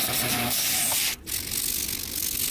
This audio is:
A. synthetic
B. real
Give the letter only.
B